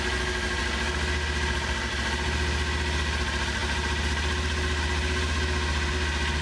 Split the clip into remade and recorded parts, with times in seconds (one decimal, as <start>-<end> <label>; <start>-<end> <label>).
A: 0.0-6.4 recorded